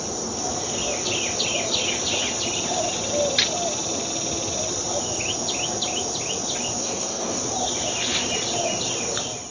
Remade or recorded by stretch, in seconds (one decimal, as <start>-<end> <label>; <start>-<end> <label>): 0.0-6.8 recorded; 6.8-7.4 remade; 7.4-9.5 recorded